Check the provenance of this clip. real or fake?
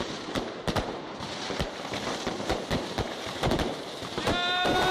fake